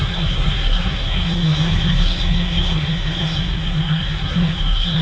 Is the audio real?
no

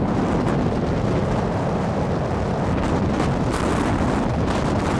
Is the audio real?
yes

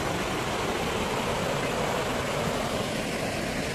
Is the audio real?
yes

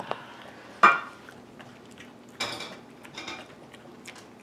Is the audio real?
yes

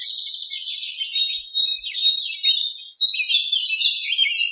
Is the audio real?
yes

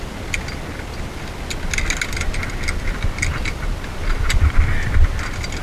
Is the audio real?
yes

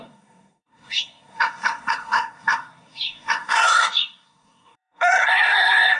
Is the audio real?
no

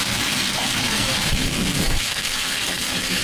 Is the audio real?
no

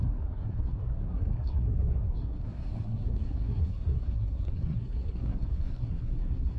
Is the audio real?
no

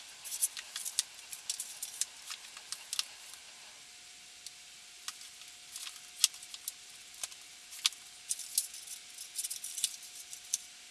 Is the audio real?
yes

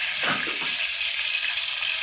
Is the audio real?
yes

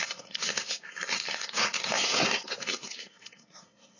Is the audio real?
no